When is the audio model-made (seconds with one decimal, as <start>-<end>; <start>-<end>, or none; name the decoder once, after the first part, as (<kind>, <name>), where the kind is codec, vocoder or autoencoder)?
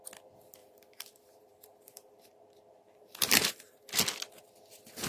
0.6-3.7 (vocoder, BigVGAN v2)